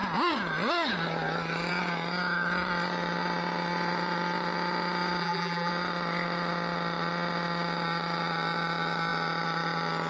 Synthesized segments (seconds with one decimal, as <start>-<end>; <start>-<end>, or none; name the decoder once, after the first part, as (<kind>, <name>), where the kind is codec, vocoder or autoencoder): 5.2-5.7 (vocoder, BigVGAN v2)